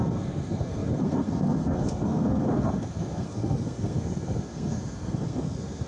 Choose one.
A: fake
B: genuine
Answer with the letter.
A